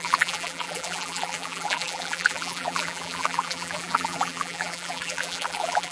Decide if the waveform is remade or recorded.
remade